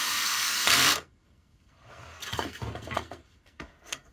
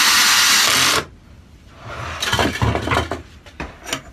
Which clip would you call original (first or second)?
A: second